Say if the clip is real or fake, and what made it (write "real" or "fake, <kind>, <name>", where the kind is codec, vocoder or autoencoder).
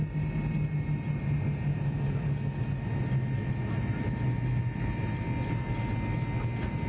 real